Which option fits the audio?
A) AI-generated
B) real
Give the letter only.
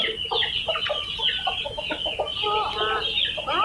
B